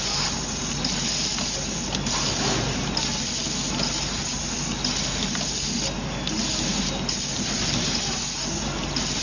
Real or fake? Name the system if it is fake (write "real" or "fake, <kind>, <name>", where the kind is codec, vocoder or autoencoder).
real